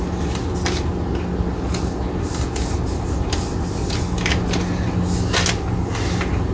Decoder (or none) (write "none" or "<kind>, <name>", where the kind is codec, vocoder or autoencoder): none